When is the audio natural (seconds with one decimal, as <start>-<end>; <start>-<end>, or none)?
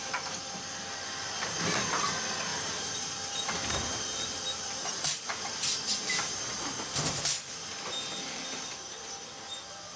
0.0-2.5; 7.7-10.0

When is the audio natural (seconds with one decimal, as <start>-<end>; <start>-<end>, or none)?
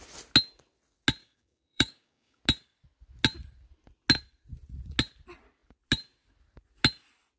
0.0-1.2; 2.4-7.4